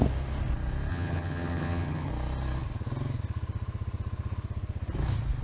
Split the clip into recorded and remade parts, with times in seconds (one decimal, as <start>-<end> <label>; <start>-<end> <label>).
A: 0.0-0.9 recorded; 0.9-2.1 remade; 2.1-5.4 recorded